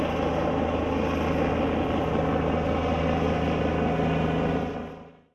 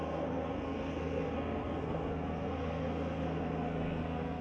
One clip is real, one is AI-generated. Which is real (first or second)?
first